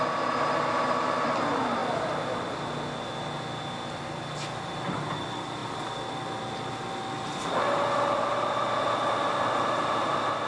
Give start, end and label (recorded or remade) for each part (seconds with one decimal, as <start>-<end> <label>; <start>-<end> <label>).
0.0-10.5 recorded